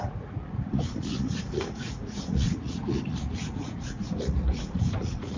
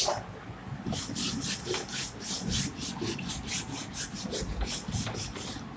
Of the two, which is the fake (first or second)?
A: first